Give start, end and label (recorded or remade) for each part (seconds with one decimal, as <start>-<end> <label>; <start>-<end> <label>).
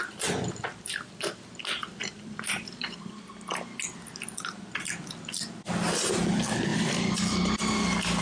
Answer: 0.0-2.0 recorded; 2.0-3.3 remade; 3.3-6.7 recorded; 6.7-7.2 remade; 7.2-8.2 recorded